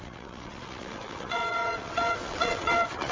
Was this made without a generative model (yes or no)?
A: no